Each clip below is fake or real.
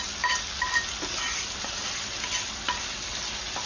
real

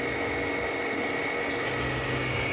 real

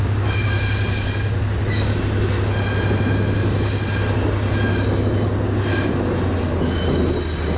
real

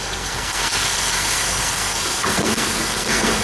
fake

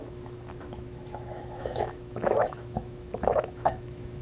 fake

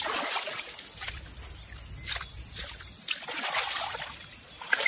real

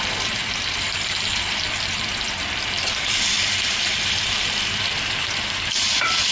fake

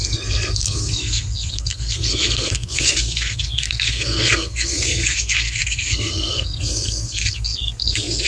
fake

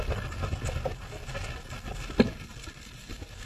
real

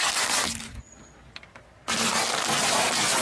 real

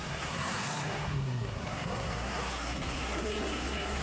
fake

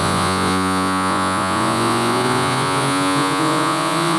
fake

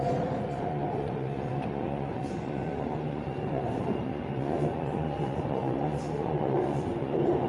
fake